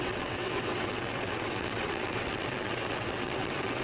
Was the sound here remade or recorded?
remade